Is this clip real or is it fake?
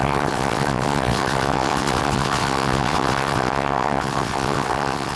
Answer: fake